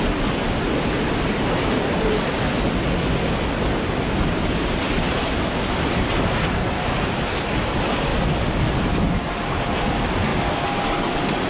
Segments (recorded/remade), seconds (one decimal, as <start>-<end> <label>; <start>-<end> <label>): 0.0-11.5 recorded